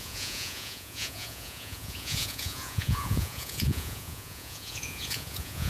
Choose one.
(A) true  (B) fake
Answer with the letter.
B